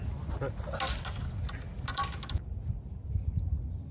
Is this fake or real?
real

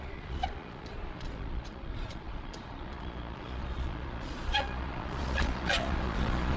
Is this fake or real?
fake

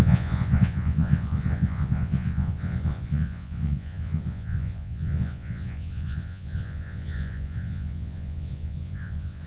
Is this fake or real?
fake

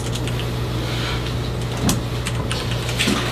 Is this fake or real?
real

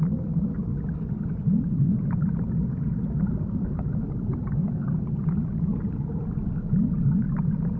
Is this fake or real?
real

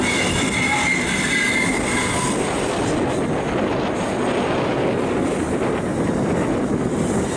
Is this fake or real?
real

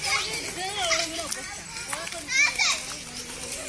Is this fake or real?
real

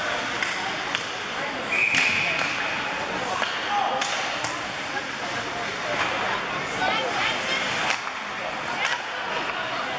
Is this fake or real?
real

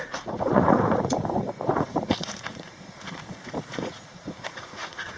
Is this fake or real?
fake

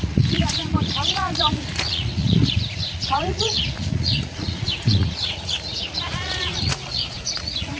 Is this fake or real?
fake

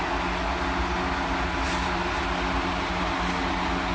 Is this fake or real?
real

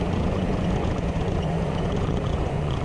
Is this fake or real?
fake